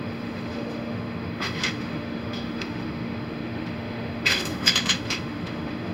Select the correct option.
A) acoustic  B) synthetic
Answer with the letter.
B